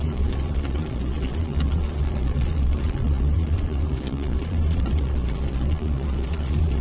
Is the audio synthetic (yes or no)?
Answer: yes